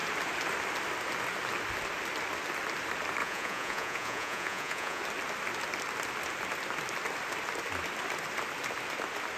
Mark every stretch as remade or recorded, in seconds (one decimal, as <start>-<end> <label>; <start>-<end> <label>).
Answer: 0.0-3.2 recorded; 3.2-5.0 remade; 5.0-9.4 recorded